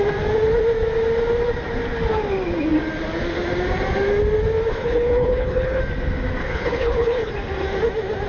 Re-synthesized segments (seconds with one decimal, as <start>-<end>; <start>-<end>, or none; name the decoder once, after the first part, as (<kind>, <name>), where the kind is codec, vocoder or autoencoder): 4.7-5.8 (codec, HILCodec); 6.4-7.3